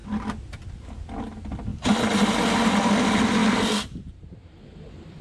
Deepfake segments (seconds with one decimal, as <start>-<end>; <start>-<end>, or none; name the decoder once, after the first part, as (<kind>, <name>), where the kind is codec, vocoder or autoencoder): none